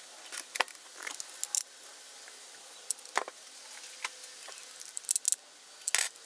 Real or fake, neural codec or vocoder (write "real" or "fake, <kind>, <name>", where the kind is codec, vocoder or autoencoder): real